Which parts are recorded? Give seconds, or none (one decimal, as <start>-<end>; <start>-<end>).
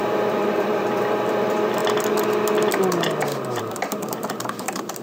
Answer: 1.8-3.6